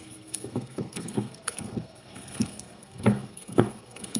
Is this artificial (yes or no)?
yes